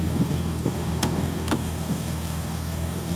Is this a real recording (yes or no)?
no